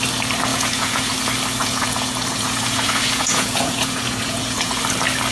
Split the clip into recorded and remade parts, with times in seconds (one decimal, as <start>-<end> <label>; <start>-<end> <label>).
0.0-0.5 recorded; 0.5-1.1 remade; 1.1-1.6 recorded; 1.6-4.8 remade; 4.8-5.3 recorded